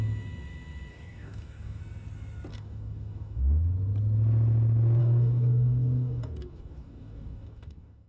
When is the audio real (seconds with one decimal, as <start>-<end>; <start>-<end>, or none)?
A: 0.0-0.9; 1.8-2.5; 3.4-5.0